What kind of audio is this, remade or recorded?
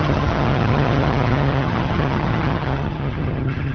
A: remade